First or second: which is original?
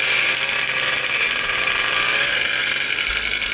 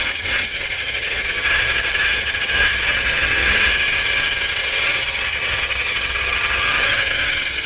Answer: first